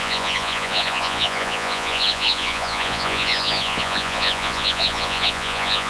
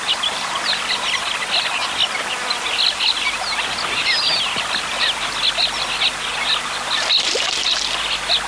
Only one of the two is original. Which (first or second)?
second